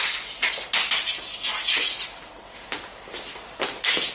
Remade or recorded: recorded